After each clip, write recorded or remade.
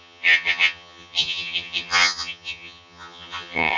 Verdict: remade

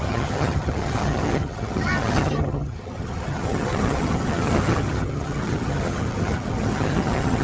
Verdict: remade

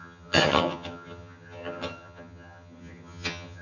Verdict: remade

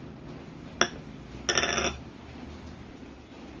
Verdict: recorded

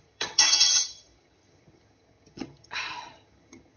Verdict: remade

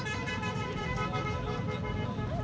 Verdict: recorded